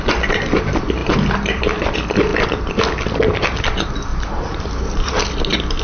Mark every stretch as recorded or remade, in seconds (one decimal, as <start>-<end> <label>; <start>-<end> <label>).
0.0-1.0 recorded; 1.0-1.6 remade; 1.6-4.1 recorded; 4.1-5.1 remade; 5.1-5.8 recorded